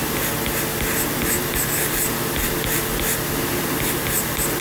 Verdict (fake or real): real